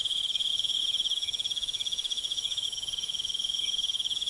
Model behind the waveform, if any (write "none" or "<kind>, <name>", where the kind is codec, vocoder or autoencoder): autoencoder, DAC-VAE